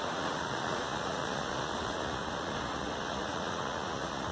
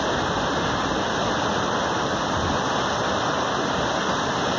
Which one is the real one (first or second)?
second